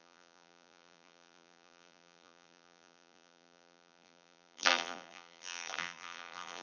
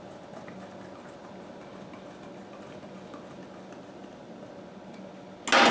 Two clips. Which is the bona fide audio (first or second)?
second